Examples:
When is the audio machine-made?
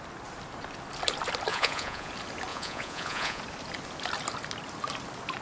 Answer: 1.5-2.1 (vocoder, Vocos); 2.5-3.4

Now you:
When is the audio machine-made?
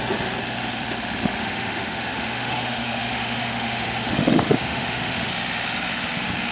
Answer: 1.4-5.3 (autoencoder, DAC-VAE)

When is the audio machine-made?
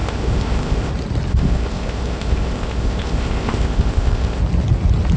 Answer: 0.0-0.9 (codec, ZipCodec); 1.3-4.4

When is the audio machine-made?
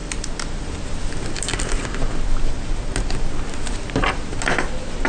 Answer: none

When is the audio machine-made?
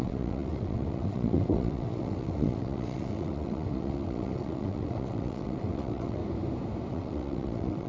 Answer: 0.0-6.2 (vocoder, WaveNeXt); 6.9-7.9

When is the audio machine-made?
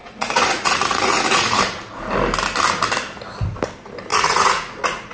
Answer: 0.0-1.6 (vocoder, Vocos); 4.1-5.1